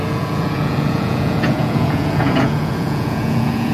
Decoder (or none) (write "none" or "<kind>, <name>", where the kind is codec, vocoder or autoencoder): vocoder, Vocos